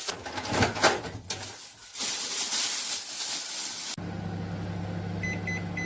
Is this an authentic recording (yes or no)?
yes